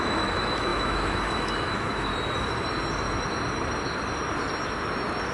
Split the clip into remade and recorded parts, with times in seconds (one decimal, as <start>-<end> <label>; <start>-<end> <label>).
0.0-2.1 remade; 2.1-5.3 recorded